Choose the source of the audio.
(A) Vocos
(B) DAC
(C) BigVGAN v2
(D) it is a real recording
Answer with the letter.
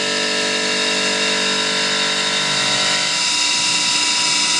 D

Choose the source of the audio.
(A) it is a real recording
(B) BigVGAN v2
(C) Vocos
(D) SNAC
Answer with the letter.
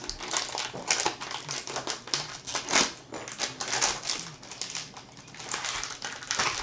A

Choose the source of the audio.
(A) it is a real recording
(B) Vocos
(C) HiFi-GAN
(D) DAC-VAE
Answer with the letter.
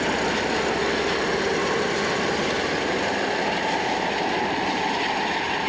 A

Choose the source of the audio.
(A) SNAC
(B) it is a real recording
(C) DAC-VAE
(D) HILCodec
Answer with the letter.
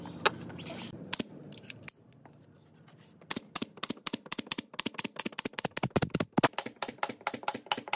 B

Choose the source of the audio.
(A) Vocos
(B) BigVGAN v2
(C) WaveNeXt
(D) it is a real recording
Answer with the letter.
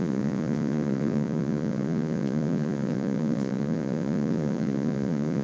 A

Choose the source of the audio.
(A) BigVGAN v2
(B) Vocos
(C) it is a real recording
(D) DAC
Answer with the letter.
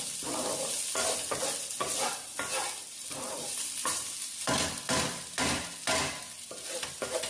C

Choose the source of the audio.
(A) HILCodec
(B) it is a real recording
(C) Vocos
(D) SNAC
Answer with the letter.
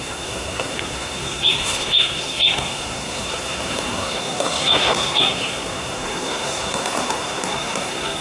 D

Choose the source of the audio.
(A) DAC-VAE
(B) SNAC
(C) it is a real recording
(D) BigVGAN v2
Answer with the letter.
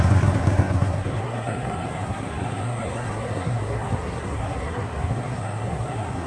B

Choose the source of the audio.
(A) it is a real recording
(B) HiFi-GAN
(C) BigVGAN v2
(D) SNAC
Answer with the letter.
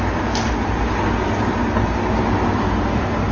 A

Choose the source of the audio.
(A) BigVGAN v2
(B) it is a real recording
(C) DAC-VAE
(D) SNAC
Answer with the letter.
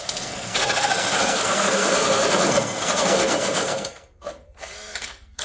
D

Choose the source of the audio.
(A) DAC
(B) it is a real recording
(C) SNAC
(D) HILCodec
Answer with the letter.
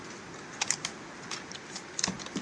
B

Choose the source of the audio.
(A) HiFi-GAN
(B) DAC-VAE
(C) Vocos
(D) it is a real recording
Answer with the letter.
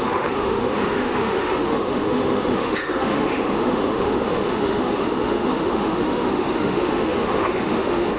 B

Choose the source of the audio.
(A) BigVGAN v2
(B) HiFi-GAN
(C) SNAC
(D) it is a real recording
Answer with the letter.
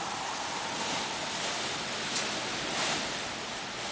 D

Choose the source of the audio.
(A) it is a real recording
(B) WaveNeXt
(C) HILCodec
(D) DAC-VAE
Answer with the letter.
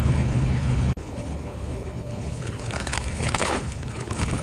C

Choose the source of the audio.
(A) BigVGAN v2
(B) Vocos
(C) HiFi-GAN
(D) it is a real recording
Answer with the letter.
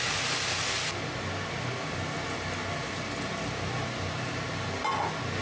D